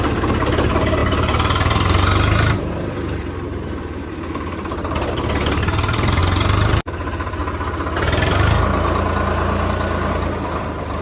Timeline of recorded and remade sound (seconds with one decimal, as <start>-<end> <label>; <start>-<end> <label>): 0.0-1.0 remade; 1.0-5.1 recorded; 5.1-7.4 remade; 7.4-10.1 recorded; 10.1-11.0 remade